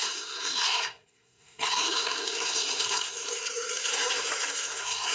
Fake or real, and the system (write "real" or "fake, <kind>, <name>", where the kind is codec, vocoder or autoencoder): fake, codec, SNAC